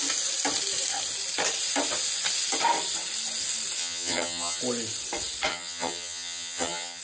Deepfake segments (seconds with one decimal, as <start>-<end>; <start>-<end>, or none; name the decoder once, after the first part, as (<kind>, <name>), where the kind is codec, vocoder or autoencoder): 3.8-4.6 (vocoder, HiFi-GAN); 5.5-7.0